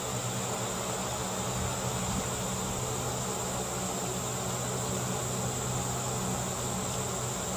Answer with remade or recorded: recorded